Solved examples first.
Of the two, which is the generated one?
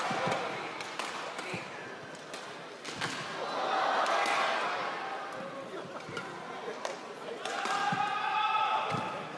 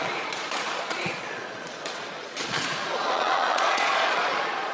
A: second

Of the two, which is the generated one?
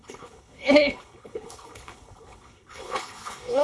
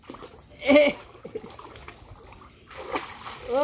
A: first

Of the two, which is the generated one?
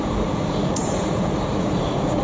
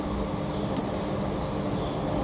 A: first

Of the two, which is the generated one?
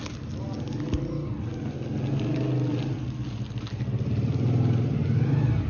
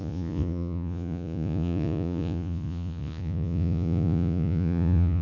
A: second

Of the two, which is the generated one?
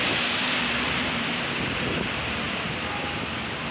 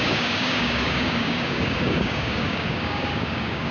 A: second